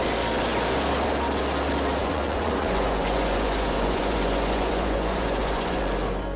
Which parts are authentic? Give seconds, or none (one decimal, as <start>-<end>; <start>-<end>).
0.0-2.0; 5.8-6.4